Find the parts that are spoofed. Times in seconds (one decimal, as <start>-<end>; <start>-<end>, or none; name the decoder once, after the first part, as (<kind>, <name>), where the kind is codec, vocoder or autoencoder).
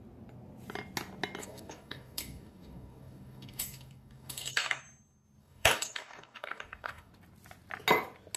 1.4-4.8 (codec, DAC); 5.4-7.1